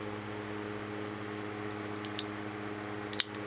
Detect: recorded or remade recorded